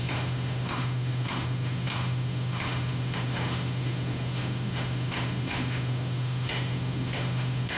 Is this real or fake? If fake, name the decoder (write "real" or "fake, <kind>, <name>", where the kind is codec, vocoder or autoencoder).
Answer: fake, autoencoder, DAC-VAE